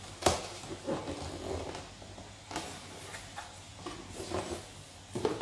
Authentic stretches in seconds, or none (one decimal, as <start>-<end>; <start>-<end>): 0.0-5.4